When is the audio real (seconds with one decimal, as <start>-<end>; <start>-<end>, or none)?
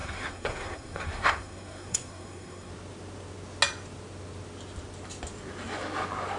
2.7-6.4